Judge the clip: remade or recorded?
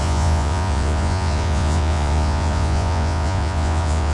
remade